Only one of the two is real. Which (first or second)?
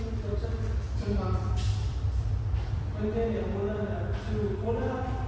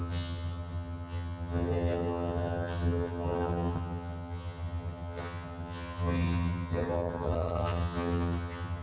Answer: first